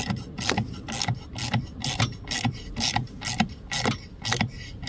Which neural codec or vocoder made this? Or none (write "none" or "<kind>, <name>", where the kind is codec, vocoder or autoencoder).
none